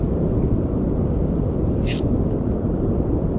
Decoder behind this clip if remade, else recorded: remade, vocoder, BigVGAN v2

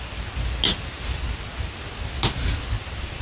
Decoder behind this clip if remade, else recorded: recorded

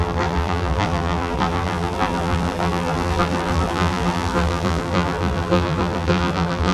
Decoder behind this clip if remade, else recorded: remade, vocoder, BigVGAN v2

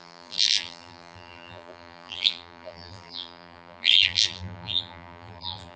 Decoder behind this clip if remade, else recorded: remade, vocoder, BigVGAN v2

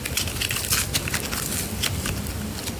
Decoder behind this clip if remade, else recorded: recorded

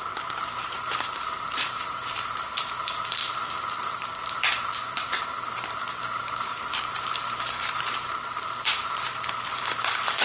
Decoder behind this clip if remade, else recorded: remade, vocoder, BigVGAN v2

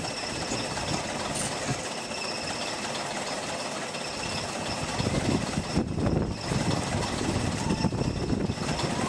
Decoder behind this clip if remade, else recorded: recorded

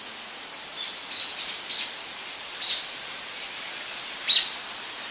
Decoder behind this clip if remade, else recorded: recorded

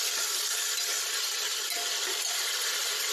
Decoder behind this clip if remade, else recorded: recorded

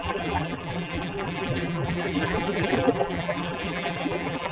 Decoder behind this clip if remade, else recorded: remade, vocoder, BigVGAN v2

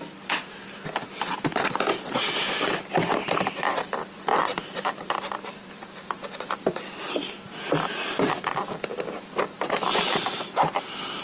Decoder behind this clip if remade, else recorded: remade, vocoder, BigVGAN v2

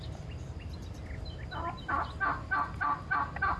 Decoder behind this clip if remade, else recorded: recorded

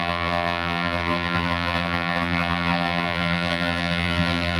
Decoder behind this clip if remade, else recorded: remade, vocoder, BigVGAN v2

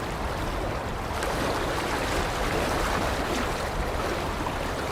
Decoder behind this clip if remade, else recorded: recorded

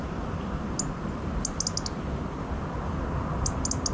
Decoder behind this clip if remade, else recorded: recorded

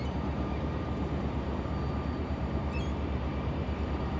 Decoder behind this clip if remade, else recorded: remade, vocoder, BigVGAN v2